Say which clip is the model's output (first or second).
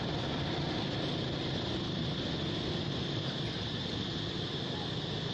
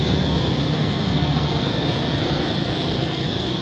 second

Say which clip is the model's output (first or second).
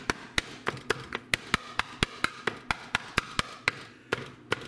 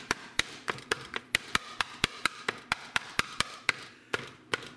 second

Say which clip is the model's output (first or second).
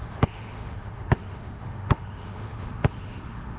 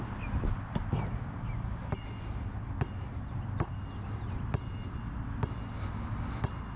first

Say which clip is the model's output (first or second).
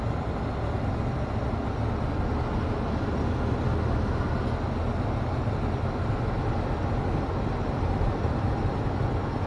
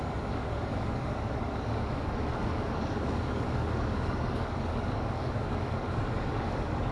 second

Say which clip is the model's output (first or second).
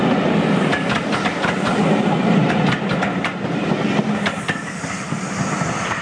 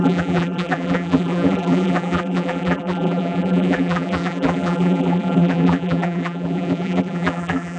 second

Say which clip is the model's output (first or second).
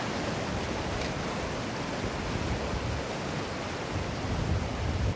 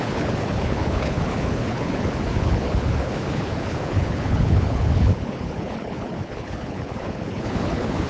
second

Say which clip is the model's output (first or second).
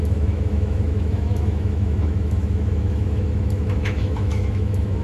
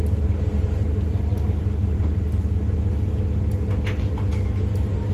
first